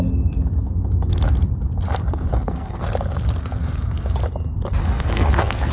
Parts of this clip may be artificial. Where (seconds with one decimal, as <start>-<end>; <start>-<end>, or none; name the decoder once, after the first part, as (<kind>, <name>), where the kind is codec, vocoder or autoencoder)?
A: 2.3-2.8 (codec, SNAC); 4.8-5.7